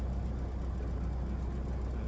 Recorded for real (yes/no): yes